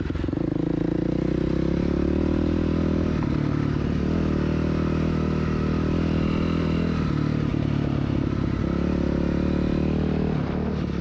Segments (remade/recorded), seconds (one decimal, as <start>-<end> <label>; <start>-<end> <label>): 0.0-7.5 recorded; 7.5-8.6 remade; 8.6-11.0 recorded